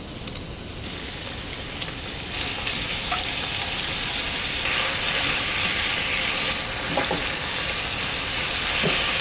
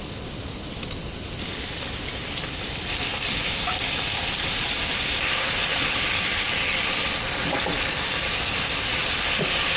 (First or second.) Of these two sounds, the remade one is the second